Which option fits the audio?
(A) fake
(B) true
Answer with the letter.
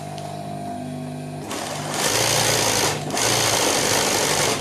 B